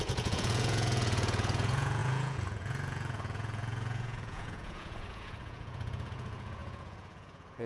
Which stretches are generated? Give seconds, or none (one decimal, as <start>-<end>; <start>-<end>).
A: 0.0-7.7